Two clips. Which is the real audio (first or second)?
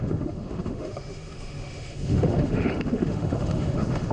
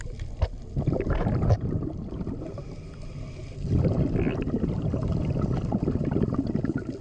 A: second